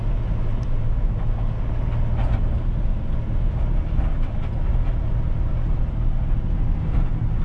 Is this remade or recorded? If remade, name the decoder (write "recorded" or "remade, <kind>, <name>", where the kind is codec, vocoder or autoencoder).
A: recorded